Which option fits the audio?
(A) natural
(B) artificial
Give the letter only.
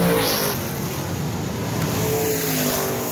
A